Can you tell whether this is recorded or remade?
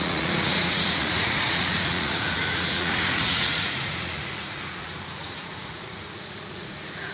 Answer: remade